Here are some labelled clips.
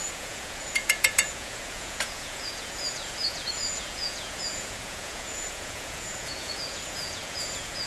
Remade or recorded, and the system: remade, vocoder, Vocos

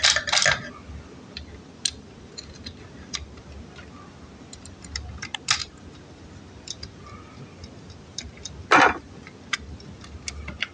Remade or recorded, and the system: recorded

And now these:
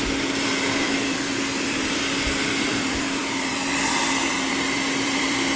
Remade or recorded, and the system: remade, vocoder, BigVGAN v2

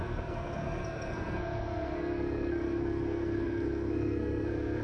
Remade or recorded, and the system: remade, codec, SNAC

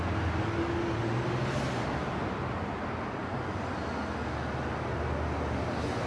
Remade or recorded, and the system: recorded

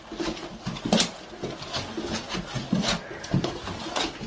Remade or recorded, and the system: recorded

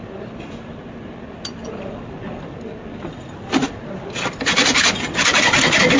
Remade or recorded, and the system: recorded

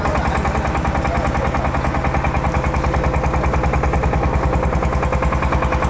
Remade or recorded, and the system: recorded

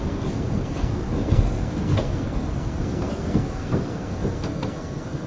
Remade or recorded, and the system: remade, codec, SNAC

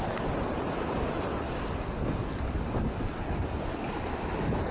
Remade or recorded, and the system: recorded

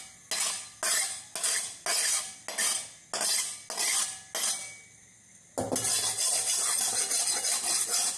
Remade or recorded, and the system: recorded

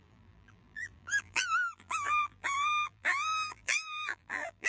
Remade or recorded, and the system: remade, vocoder, BigVGAN v2